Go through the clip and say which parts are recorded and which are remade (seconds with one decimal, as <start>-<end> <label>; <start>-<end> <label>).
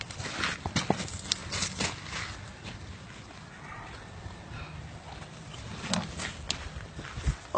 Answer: 0.0-7.6 recorded